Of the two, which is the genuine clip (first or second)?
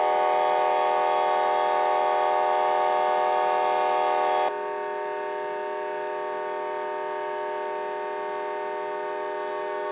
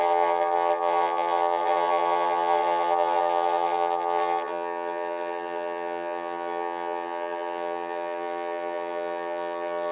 first